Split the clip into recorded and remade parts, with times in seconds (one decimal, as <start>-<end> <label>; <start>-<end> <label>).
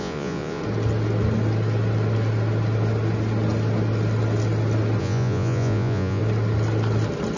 0.0-0.6 remade; 0.6-5.0 recorded; 5.0-6.2 remade; 6.2-7.4 recorded